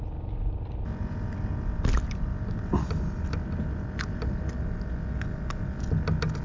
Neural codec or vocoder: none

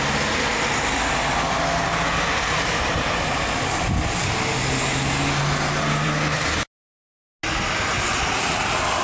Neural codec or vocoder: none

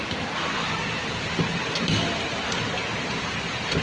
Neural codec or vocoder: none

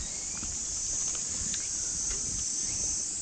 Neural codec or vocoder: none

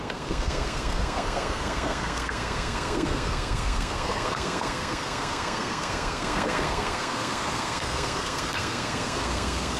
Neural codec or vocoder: codec, SNAC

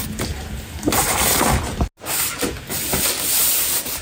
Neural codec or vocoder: none